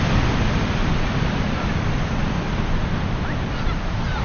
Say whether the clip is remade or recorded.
recorded